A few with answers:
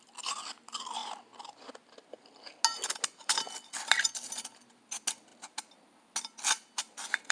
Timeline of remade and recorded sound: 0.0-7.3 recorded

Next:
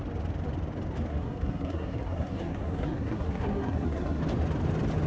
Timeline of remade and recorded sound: 0.0-1.1 recorded; 1.1-4.2 remade; 4.2-5.1 recorded

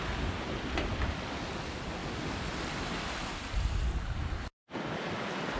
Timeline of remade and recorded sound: 0.0-5.6 recorded

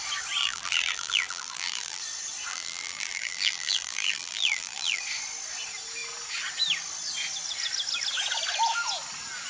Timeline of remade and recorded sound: 0.0-0.4 recorded; 0.4-2.0 remade; 2.0-2.5 recorded; 2.5-5.0 remade; 5.0-9.5 recorded

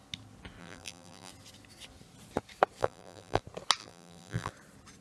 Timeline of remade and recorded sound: 0.0-0.6 recorded; 0.6-1.3 remade; 1.3-2.8 recorded; 2.8-3.4 remade; 3.4-3.8 recorded; 3.8-4.5 remade; 4.5-5.0 recorded

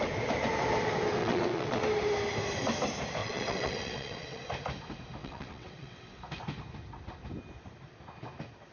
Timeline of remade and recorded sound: 0.0-1.2 recorded; 1.2-1.8 remade; 1.8-3.2 recorded; 3.2-4.4 remade; 4.4-5.2 recorded; 5.2-6.2 remade; 6.2-8.7 recorded